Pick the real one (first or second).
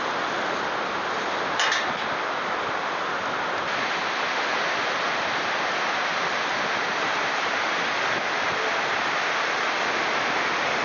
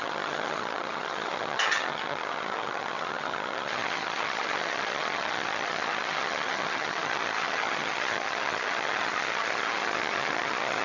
first